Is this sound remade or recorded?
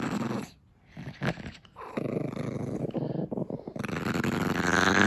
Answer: recorded